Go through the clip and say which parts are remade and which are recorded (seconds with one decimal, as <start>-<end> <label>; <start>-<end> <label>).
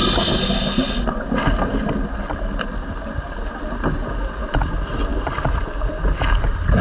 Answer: 0.0-6.8 recorded